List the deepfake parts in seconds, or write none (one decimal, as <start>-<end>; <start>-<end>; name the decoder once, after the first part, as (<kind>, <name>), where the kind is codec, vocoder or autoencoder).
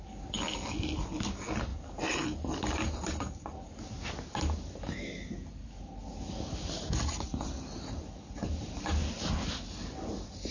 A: none